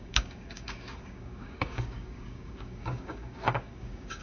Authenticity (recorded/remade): remade